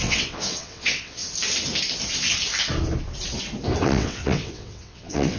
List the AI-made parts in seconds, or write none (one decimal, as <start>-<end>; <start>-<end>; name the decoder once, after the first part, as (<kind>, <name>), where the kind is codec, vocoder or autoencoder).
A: 0.0-1.2 (vocoder, WaveNeXt); 3.8-5.4